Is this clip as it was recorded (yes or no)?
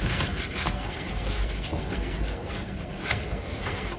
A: no